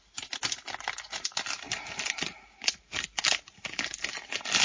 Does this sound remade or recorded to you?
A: recorded